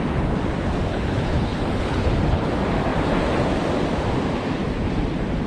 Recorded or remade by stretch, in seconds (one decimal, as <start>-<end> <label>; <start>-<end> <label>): 0.0-0.9 recorded; 0.9-2.5 remade; 2.5-5.5 recorded